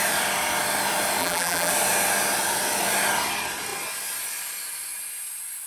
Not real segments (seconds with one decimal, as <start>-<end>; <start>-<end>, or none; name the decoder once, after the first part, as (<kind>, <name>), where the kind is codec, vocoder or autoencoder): 1.2-1.7 (vocoder, BigVGAN v2)